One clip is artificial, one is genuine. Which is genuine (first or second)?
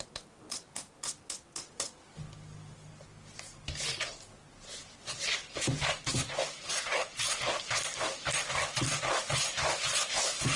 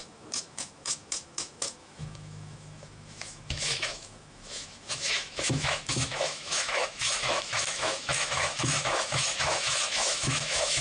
first